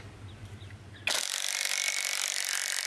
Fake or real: real